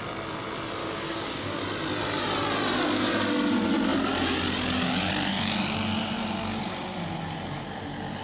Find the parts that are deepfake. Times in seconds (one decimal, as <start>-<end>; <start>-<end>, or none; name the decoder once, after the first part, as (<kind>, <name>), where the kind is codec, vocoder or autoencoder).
0.8-1.6 (codec, DAC)